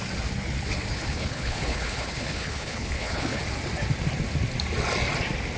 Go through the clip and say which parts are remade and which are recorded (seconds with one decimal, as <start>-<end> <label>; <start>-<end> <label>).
0.0-0.9 recorded; 0.9-3.4 remade; 3.4-5.6 recorded